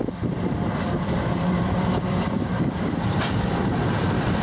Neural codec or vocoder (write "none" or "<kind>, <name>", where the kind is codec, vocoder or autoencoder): vocoder, BigVGAN v2